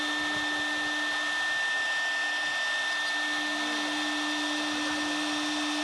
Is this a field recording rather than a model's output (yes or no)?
yes